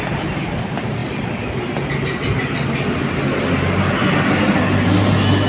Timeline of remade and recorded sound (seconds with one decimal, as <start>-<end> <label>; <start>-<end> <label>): 0.0-5.5 recorded